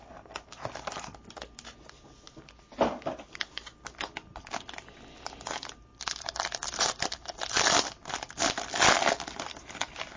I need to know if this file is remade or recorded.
recorded